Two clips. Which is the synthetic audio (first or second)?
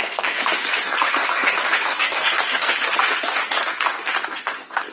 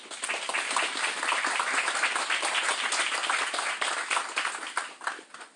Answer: first